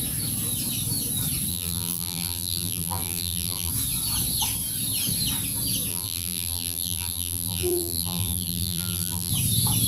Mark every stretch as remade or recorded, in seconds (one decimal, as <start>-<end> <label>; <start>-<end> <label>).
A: 0.0-1.5 recorded; 1.5-3.7 remade; 3.7-5.9 recorded; 5.9-9.3 remade; 9.3-9.9 recorded